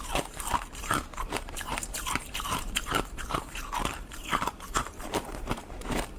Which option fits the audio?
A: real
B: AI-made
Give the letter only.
B